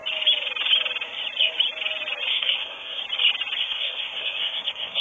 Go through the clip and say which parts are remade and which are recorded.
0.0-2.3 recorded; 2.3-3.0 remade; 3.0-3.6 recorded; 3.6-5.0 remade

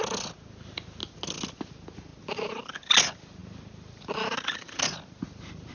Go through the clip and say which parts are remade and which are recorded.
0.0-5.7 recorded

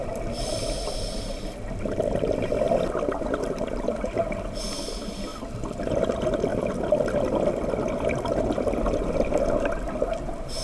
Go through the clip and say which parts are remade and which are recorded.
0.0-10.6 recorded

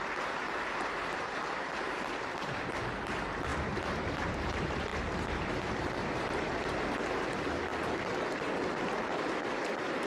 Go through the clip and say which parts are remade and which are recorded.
0.0-3.5 remade; 3.5-4.1 recorded; 4.1-7.7 remade; 7.7-9.3 recorded; 9.3-10.1 remade

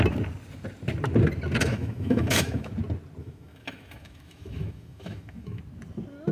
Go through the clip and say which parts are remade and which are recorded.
0.0-1.6 recorded; 1.6-2.7 remade; 2.7-3.2 recorded; 3.2-5.6 remade; 5.6-6.3 recorded